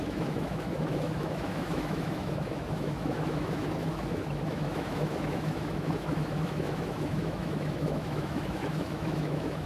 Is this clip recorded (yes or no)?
no